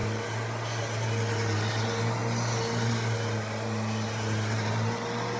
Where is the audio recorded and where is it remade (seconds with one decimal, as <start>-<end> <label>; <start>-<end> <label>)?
0.0-5.4 recorded